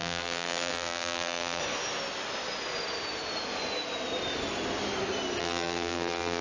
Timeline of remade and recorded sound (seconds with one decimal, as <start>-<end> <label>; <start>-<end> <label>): 0.0-1.6 remade; 1.6-5.4 recorded; 5.4-6.4 remade